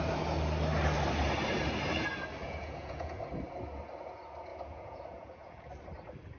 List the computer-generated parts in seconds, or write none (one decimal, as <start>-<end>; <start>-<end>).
2.4-3.2; 4.5-5.7